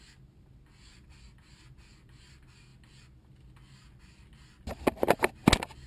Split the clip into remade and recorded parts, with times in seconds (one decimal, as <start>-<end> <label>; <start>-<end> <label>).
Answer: 0.0-5.9 recorded